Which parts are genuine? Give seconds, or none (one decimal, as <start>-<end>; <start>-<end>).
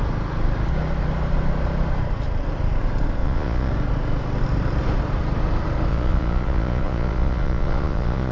0.0-3.2; 3.7-5.9